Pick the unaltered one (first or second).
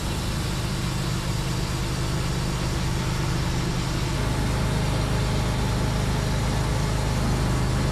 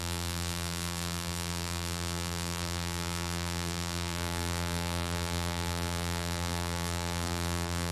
first